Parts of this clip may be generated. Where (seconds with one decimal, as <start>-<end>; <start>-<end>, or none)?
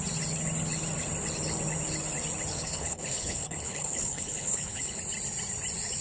2.5-5.0